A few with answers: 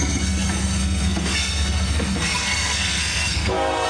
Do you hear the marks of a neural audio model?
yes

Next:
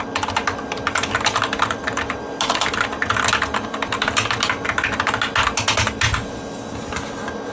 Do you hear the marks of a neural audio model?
no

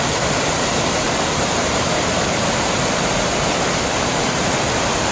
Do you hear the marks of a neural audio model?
yes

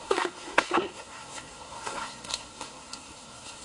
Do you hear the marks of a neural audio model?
yes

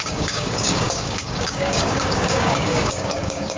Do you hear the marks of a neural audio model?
yes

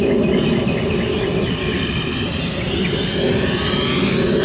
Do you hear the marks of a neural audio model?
no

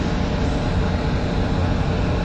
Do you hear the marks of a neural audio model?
no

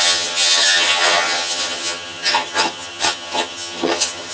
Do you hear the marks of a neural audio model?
yes